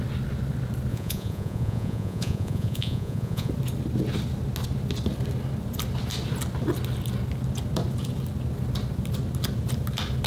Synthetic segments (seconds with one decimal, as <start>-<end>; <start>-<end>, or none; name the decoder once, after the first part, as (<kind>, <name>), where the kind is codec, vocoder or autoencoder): 0.9-3.5 (vocoder, Vocos)